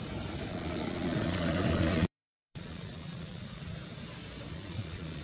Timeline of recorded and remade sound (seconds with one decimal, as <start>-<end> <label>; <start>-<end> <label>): 0.0-0.5 recorded; 0.5-3.6 remade; 3.6-4.5 recorded; 4.5-5.2 remade